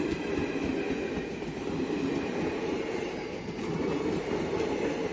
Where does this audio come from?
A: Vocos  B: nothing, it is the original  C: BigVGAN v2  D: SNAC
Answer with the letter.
B